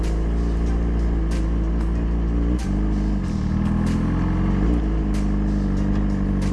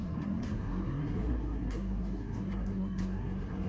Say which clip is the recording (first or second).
first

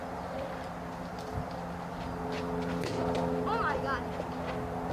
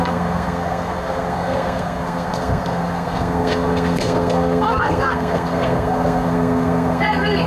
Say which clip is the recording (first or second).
first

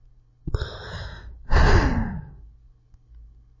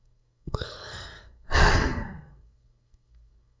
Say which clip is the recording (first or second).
first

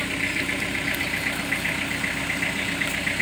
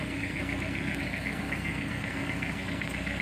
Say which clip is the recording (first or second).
first